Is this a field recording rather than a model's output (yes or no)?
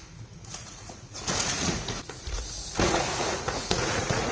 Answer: no